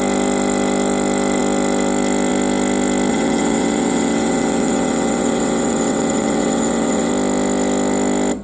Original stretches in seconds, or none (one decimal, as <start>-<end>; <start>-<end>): 0.0-3.1; 7.1-8.4